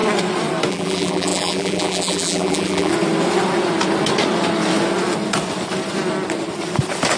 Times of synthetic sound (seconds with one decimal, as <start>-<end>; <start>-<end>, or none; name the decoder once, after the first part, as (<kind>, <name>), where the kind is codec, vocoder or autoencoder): 0.7-2.9 (vocoder, BigVGAN v2)